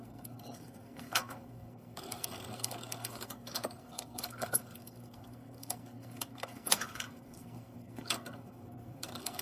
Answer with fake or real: fake